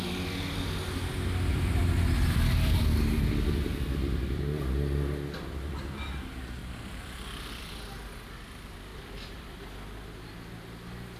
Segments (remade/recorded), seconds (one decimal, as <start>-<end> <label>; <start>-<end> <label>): 0.0-1.5 recorded; 1.5-2.8 remade; 2.8-6.6 recorded; 6.6-7.6 remade; 7.6-8.9 recorded; 8.9-9.6 remade; 9.6-11.2 recorded

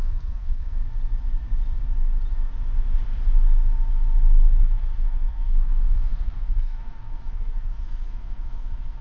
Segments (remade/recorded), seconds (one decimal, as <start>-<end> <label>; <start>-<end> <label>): 0.0-0.8 remade; 0.8-4.6 recorded; 4.6-9.0 remade

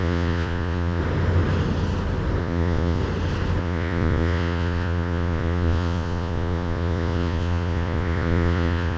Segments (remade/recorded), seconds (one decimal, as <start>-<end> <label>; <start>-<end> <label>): 0.0-1.0 remade; 1.0-2.4 recorded; 2.4-3.0 remade; 3.0-3.6 recorded; 3.6-9.0 remade

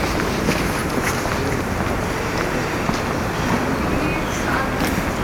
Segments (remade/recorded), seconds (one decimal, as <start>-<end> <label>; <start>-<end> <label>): 0.0-5.2 recorded

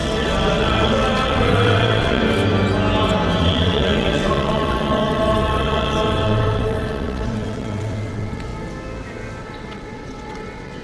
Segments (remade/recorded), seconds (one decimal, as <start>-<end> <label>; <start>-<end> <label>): 0.0-2.2 remade; 2.2-3.4 recorded; 3.4-8.5 remade; 8.5-9.4 recorded; 9.4-10.8 remade